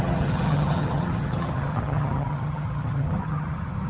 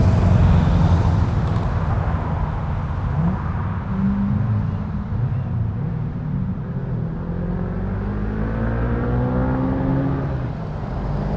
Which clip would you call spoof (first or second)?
first